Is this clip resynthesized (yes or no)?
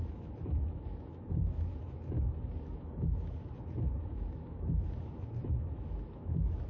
yes